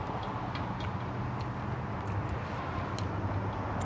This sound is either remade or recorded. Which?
recorded